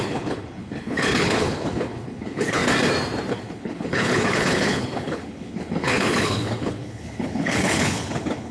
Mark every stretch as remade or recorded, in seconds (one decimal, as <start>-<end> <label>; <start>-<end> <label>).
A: 0.0-2.6 remade; 2.6-3.3 recorded; 3.3-8.5 remade